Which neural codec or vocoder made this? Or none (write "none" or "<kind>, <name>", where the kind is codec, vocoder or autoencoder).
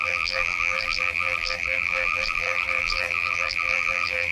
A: vocoder, BigVGAN v2